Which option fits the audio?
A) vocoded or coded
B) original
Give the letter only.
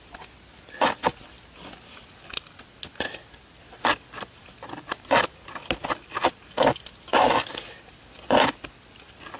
B